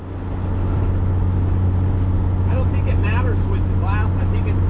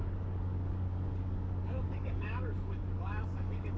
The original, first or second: first